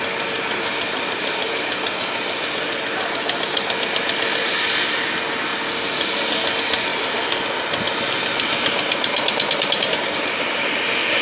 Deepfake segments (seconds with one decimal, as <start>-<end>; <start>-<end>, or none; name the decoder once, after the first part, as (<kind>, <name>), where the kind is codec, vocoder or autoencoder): none